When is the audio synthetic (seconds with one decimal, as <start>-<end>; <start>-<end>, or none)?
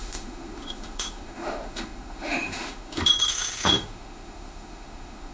0.0-5.3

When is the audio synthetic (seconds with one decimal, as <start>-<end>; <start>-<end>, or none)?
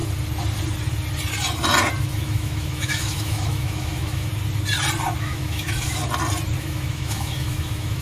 2.0-4.3; 5.2-6.0; 6.6-8.0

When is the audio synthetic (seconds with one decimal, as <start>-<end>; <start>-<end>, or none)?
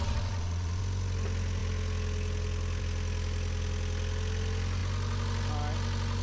0.0-0.8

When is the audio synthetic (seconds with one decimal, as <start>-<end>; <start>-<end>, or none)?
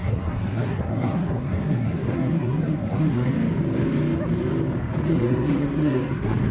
0.0-3.3; 5.1-6.5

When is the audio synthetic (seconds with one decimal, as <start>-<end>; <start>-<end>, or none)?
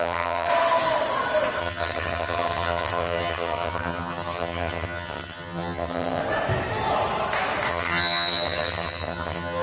0.0-0.5; 1.6-6.2; 7.7-9.6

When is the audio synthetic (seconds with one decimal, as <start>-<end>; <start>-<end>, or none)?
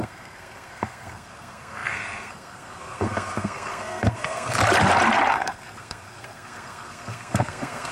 0.0-4.6; 5.3-7.9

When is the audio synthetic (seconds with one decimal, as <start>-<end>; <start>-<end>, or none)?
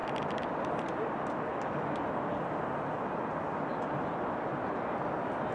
none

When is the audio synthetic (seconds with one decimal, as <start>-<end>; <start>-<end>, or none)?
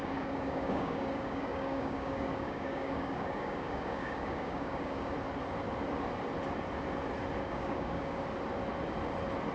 0.0-5.1; 7.4-8.2